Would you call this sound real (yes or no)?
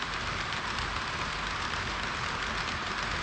yes